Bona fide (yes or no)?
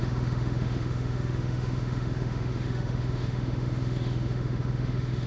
no